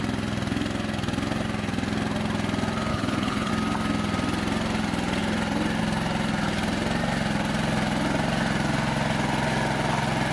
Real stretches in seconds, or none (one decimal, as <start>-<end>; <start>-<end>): 0.0-2.9; 3.5-10.3